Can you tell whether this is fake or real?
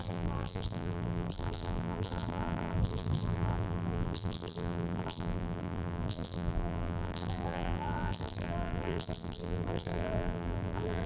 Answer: fake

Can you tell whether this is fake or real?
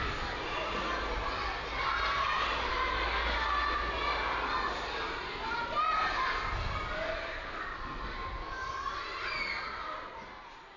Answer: real